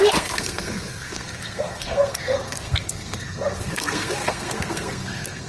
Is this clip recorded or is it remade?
remade